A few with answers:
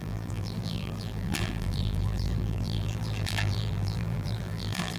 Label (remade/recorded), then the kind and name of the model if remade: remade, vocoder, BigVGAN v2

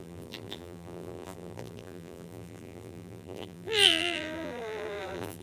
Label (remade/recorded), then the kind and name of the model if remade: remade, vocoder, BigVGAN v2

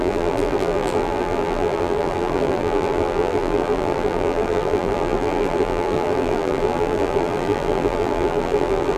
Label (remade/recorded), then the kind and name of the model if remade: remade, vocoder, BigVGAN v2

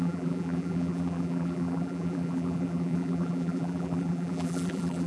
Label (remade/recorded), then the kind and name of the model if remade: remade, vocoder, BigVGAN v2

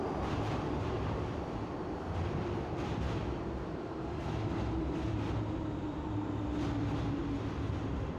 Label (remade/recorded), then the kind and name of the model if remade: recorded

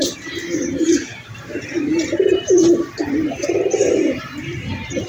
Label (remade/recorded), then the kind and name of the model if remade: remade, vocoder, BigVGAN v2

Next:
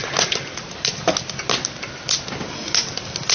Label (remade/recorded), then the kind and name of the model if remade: recorded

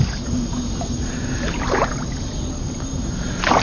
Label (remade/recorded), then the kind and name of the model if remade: remade, vocoder, BigVGAN v2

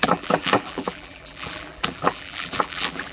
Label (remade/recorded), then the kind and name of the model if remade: remade, vocoder, BigVGAN v2